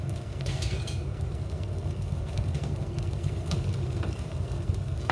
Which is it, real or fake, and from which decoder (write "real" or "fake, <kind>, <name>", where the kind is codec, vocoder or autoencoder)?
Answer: fake, codec, SNAC